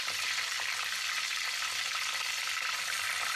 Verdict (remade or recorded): recorded